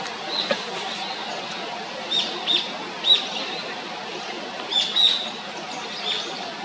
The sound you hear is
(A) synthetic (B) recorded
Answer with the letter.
B